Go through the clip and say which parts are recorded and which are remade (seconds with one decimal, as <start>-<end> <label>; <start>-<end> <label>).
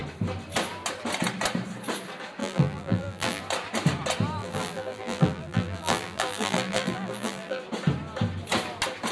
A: 0.0-2.4 recorded; 2.4-3.4 remade; 3.4-4.4 recorded; 4.4-7.6 remade; 7.6-9.1 recorded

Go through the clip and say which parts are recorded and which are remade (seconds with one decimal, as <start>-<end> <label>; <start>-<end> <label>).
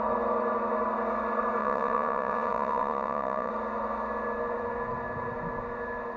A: 0.0-1.6 recorded; 1.6-3.5 remade; 3.5-6.2 recorded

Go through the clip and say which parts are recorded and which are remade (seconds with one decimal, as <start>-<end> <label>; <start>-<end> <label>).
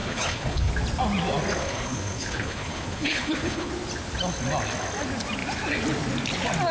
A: 0.0-0.7 remade; 0.7-1.6 recorded; 1.6-3.7 remade; 3.7-6.7 recorded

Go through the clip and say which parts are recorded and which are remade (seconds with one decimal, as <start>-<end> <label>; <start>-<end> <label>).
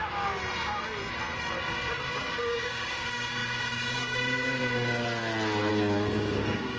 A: 0.0-0.4 remade; 0.4-2.1 recorded; 2.1-5.0 remade; 5.0-5.7 recorded; 5.7-6.8 remade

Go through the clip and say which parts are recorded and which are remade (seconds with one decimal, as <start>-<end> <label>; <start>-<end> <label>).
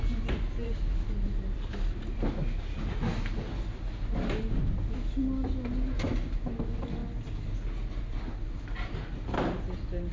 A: 0.0-10.1 recorded